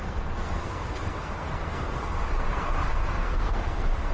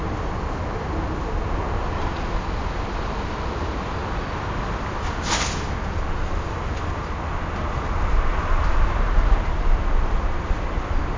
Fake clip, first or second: first